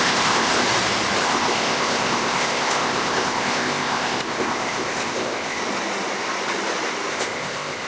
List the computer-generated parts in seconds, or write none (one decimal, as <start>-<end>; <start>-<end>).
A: 0.0-0.5; 1.2-5.6; 7.1-7.9